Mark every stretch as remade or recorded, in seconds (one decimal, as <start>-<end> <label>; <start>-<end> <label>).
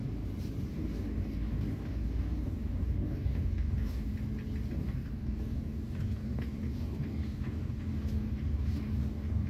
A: 0.0-0.7 recorded; 0.7-4.1 remade; 4.1-4.7 recorded; 4.7-9.5 remade